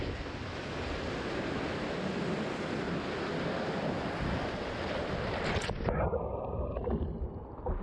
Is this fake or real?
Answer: real